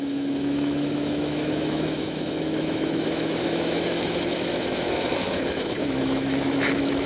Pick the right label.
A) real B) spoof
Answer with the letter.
B